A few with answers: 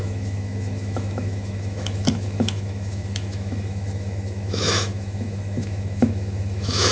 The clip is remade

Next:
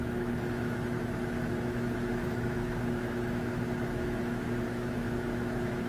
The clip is remade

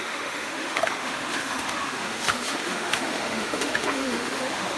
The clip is remade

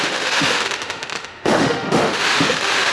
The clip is remade